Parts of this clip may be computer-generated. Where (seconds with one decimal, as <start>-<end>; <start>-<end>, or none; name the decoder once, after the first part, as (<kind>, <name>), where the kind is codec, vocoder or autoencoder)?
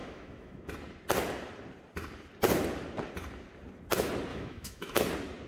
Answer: 0.0-0.7 (autoencoder, DAC-VAE); 4.3-5.0